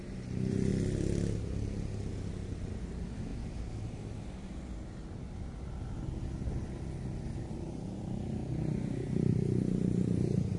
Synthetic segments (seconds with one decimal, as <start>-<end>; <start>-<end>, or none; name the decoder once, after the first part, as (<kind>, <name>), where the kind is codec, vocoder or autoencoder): 0.0-0.7 (vocoder, BigVGAN v2); 2.7-3.3; 7.5-8.4; 9.0-10.6